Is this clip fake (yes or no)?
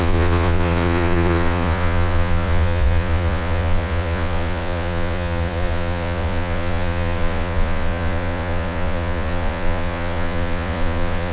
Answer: yes